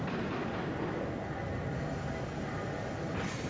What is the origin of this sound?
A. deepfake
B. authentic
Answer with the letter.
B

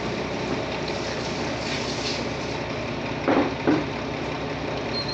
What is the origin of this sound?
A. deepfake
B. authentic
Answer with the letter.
B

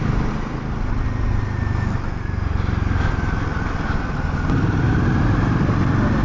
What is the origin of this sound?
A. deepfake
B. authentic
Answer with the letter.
B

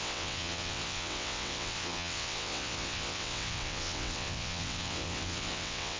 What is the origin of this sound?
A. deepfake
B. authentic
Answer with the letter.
A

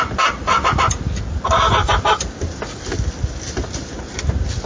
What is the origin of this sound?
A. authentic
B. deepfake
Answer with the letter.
A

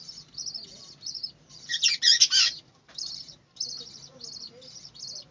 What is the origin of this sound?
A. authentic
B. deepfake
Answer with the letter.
A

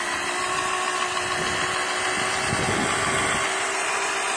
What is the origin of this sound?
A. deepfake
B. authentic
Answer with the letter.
B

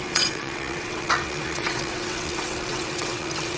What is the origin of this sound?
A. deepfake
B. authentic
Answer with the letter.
A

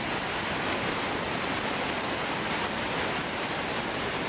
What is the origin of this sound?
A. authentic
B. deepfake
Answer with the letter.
A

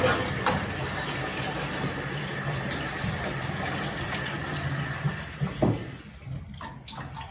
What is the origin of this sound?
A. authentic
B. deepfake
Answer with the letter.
A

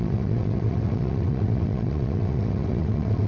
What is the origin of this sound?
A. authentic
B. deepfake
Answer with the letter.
B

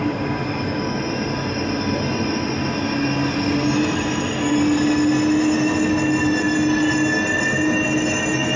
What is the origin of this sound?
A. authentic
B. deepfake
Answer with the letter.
A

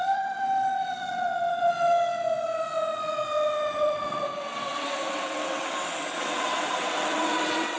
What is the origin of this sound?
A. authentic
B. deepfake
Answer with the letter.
B